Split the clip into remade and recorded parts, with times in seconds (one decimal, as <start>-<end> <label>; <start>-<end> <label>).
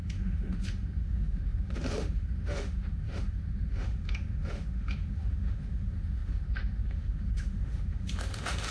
0.0-8.7 remade